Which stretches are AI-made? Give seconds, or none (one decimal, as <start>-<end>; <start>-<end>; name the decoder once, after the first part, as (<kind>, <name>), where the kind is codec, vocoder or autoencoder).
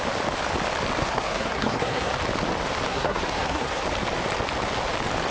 1.0-2.1 (codec, SNAC); 2.9-3.8